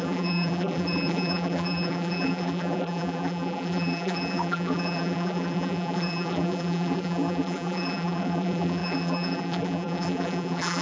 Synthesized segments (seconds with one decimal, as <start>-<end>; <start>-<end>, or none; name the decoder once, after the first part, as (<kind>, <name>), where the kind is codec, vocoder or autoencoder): 0.0-10.8 (vocoder, BigVGAN v2)